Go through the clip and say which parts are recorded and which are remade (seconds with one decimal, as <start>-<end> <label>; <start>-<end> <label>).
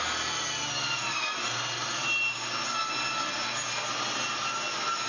0.0-5.1 recorded